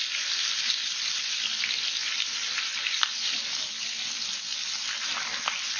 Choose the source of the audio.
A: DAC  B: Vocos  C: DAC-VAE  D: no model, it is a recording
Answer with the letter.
D